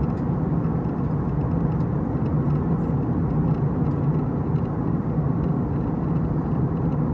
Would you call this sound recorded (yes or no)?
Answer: yes